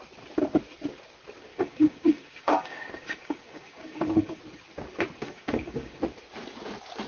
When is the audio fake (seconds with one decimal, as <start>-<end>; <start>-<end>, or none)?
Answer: 1.5-4.4; 5.2-6.0